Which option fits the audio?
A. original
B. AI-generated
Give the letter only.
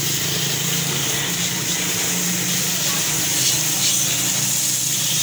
A